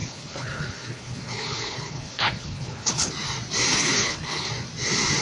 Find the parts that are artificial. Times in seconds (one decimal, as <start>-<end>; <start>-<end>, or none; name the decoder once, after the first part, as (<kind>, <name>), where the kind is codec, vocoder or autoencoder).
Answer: 0.0-3.1 (codec, HILCodec); 3.7-4.5

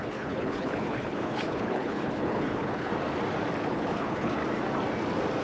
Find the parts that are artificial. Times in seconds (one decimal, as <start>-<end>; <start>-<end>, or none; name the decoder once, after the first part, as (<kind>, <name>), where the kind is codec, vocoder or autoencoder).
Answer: 0.0-2.9 (codec, HILCodec); 3.7-4.4

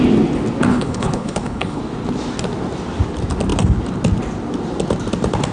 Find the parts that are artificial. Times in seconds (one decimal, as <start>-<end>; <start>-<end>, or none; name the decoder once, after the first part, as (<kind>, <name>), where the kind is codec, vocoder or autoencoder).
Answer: 0.7-1.8 (codec, HILCodec)

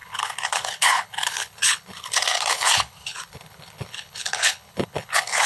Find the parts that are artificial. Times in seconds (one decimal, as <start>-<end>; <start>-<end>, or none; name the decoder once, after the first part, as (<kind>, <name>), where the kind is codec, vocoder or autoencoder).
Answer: 0.0-5.5 (codec, HILCodec)

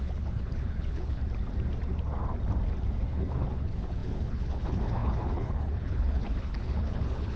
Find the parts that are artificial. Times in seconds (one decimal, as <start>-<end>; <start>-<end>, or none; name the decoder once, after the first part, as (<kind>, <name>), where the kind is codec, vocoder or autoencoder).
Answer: 0.0-1.2 (codec, HILCodec); 2.9-7.4

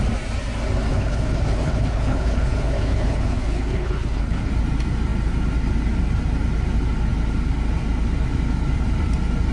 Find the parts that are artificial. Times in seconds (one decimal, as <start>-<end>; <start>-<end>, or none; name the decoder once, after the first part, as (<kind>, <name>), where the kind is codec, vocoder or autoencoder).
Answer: 0.9-4.5 (codec, HILCodec)